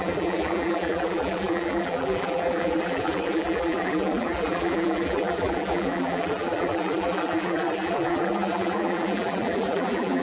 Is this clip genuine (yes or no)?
no